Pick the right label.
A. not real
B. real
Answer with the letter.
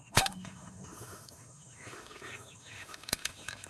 A